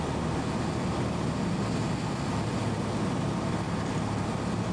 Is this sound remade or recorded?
recorded